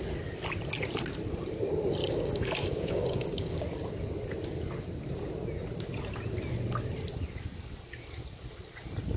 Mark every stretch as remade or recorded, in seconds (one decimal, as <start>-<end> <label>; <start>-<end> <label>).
0.0-2.0 recorded; 2.0-3.6 remade; 3.6-9.2 recorded